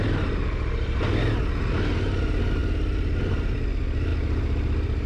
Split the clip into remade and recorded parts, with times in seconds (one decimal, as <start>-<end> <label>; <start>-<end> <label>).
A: 0.0-5.1 recorded